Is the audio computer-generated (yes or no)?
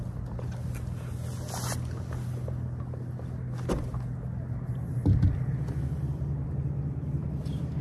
no